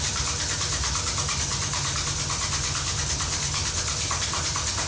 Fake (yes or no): no